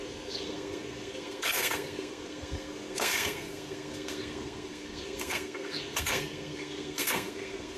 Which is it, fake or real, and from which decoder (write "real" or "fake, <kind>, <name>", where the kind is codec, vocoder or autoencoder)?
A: fake, codec, SNAC